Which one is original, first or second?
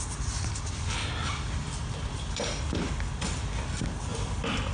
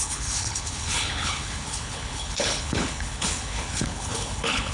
first